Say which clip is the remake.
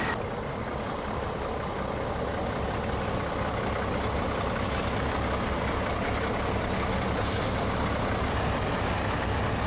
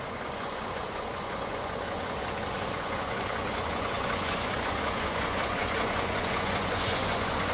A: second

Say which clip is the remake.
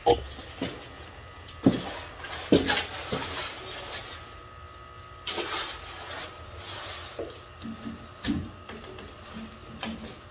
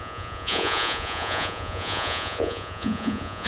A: second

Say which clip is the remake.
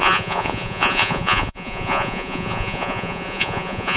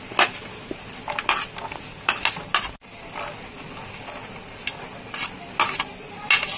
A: first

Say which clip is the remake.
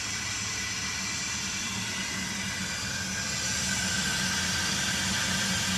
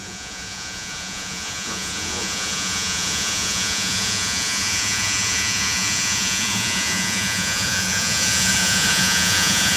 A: second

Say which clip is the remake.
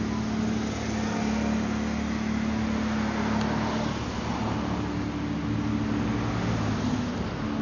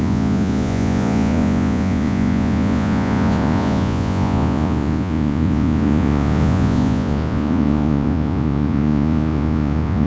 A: second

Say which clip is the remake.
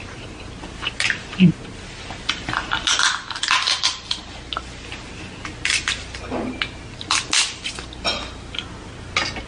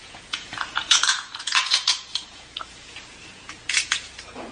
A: second